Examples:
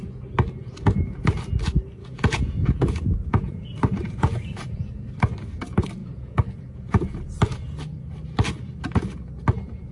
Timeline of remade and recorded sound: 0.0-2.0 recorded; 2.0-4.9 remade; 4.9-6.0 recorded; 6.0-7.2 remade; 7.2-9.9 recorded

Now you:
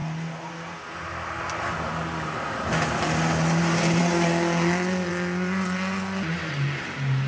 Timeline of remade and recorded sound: 0.0-7.3 recorded

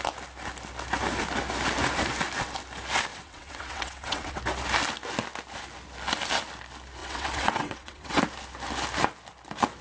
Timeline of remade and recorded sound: 0.0-3.1 recorded; 3.1-4.4 remade; 4.4-7.0 recorded; 7.0-8.2 remade; 8.2-9.8 recorded

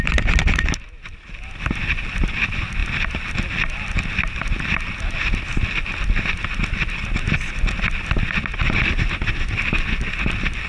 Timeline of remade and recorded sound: 0.0-10.7 recorded